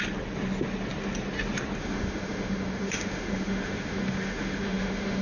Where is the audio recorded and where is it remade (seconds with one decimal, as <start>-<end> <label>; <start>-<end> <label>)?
0.0-1.8 recorded; 1.8-5.2 remade